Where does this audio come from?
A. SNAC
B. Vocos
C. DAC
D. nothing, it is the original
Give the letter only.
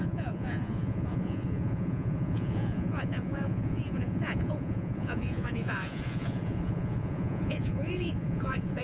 B